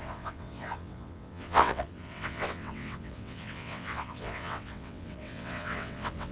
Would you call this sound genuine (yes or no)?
no